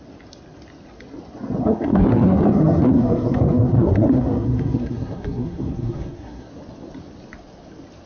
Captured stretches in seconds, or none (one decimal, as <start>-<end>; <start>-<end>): 0.0-1.6; 6.5-8.1